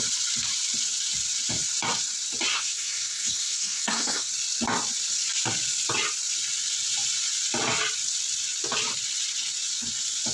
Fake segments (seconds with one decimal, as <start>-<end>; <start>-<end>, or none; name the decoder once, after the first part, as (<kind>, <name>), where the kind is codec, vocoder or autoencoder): 2.5-4.3 (codec, SNAC)